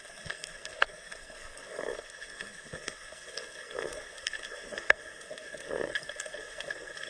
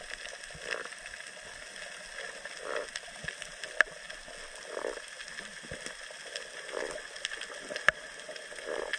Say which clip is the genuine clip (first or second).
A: second